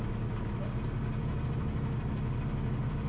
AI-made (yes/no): no